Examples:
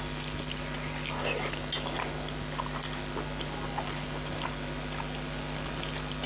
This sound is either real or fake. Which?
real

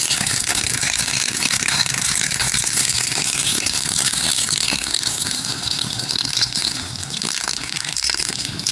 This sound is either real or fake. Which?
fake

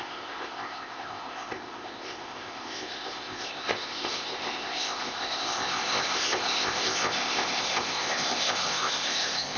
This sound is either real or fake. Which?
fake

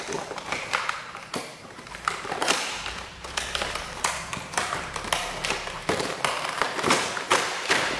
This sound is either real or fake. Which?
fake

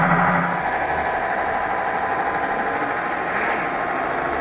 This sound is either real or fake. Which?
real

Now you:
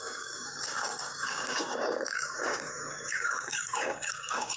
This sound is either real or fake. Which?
fake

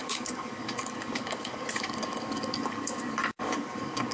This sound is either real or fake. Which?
fake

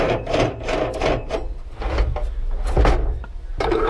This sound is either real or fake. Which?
real